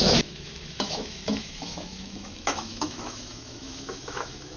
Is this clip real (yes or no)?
no